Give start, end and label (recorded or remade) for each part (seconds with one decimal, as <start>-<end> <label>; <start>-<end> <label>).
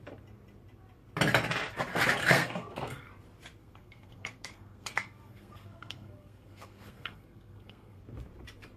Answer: 0.0-2.2 recorded; 2.2-3.1 remade; 3.1-3.6 recorded; 3.6-8.0 remade; 8.0-8.8 recorded